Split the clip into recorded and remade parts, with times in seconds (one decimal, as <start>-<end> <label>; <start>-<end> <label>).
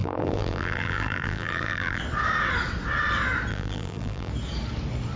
0.0-2.0 remade; 2.0-3.5 recorded; 3.5-4.3 remade; 4.3-5.2 recorded